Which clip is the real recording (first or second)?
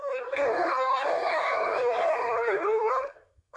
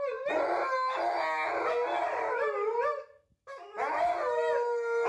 second